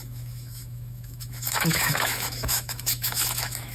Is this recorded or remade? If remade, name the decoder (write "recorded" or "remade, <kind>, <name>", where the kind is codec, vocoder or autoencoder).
remade, autoencoder, DAC-VAE